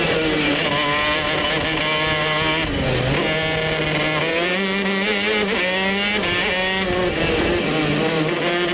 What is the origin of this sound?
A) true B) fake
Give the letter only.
A